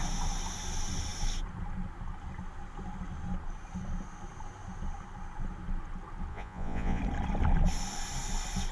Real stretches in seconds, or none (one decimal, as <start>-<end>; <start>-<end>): 0.0-6.3; 7.0-8.7